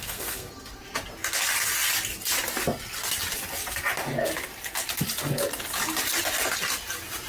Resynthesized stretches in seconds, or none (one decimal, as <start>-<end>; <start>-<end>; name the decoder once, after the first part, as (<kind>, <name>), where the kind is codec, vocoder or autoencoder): 0.0-0.5 (codec, SNAC)